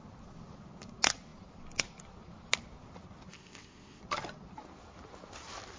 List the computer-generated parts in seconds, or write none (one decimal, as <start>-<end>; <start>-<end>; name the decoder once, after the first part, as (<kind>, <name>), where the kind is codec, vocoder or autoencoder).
3.3-4.0 (codec, ZipCodec)